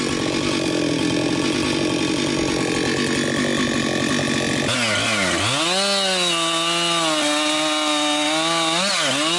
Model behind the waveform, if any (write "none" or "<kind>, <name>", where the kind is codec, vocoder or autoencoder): none